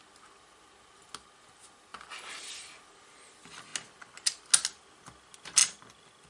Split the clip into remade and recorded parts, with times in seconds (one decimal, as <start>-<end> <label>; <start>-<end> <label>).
0.0-6.3 recorded